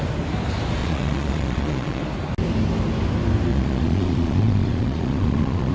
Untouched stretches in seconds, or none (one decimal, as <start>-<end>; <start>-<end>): 0.0-0.8; 2.0-3.5

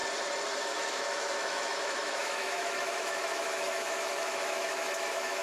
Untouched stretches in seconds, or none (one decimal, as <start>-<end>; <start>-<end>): 0.0-0.6

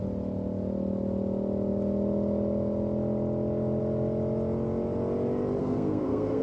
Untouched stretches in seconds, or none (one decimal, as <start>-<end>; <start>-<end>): 0.0-5.6

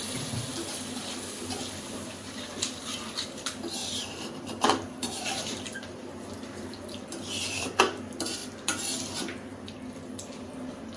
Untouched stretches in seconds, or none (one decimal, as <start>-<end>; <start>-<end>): 0.0-3.8; 7.8-8.4; 9.9-11.0

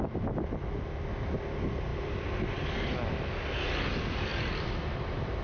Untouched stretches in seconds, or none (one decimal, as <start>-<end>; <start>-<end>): 0.0-5.4

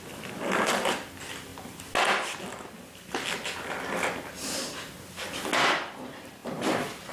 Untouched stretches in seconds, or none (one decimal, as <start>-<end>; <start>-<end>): 0.0-7.1

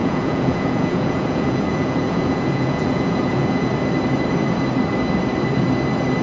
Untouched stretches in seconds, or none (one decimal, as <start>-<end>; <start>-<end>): 3.7-6.2

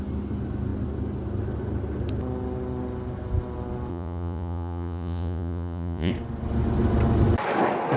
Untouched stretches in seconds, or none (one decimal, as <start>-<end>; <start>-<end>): 0.0-3.9; 6.1-8.0